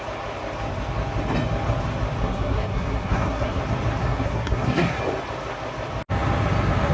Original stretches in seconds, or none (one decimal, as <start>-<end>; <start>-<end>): 0.0-2.2; 3.6-4.0; 5.0-6.9